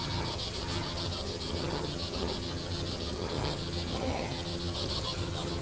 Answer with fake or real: fake